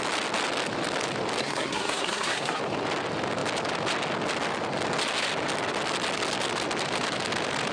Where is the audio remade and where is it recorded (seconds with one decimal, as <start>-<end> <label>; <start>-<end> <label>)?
0.0-1.4 recorded; 1.4-2.6 remade; 2.6-7.7 recorded